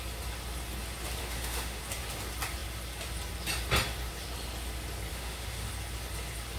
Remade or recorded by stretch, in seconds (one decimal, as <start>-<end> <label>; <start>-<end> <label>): 0.0-1.2 recorded; 1.2-1.8 remade; 1.8-5.1 recorded; 5.1-5.7 remade; 5.7-6.6 recorded